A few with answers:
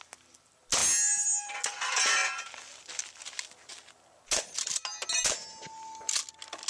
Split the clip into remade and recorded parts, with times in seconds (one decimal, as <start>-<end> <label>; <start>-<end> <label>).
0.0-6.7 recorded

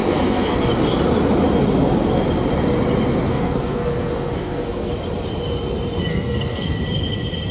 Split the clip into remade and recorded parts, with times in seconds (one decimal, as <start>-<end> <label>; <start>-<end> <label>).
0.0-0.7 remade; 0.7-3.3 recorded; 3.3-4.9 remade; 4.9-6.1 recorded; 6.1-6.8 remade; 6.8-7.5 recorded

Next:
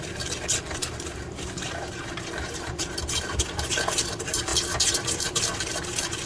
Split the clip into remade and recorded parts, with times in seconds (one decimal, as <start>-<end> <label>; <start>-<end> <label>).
0.0-0.8 recorded; 0.8-3.7 remade; 3.7-4.5 recorded; 4.5-5.4 remade; 5.4-6.3 recorded

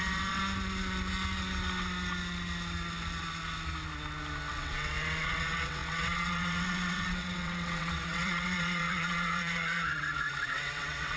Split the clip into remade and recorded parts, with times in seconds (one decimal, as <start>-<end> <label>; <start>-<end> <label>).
0.0-0.4 remade; 0.4-4.5 recorded; 4.5-11.2 remade